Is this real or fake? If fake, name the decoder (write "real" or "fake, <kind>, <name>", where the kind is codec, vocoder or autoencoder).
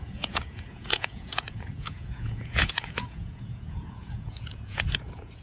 fake, vocoder, Vocos